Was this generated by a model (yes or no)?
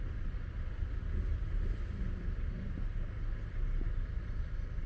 no